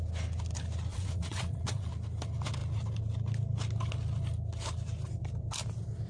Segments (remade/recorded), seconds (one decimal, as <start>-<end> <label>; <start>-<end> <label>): 0.0-0.9 recorded; 0.9-1.9 remade; 1.9-6.1 recorded